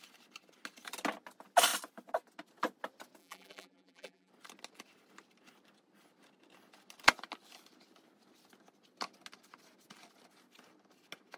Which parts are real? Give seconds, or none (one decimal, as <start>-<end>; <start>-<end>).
0.0-3.2; 4.3-11.4